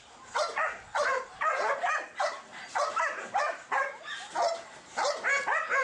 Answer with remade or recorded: recorded